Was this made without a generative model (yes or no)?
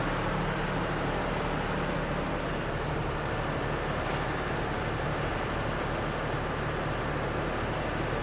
yes